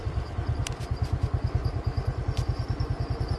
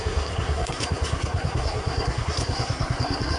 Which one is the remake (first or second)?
second